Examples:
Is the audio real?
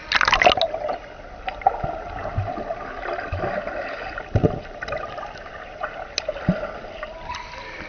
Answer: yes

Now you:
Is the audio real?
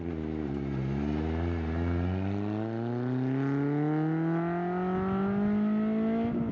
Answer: yes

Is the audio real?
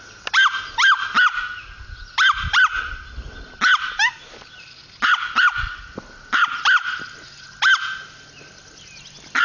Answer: yes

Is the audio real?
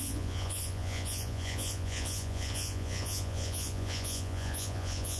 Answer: no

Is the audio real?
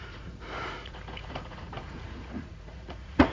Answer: no